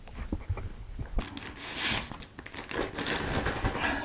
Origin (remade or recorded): recorded